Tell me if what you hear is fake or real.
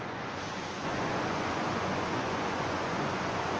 fake